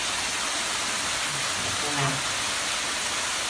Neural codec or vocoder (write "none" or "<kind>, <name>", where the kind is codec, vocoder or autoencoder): none